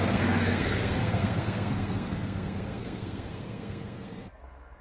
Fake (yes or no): yes